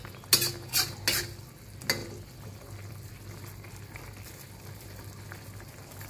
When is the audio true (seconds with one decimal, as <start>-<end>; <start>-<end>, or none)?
0.0-2.0; 3.1-6.1